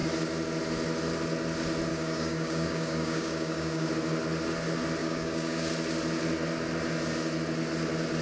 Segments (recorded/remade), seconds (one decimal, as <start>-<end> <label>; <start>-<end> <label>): 0.0-1.9 recorded; 1.9-3.9 remade; 3.9-5.0 recorded; 5.0-5.7 remade; 5.7-8.2 recorded